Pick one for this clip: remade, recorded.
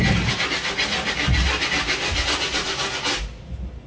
recorded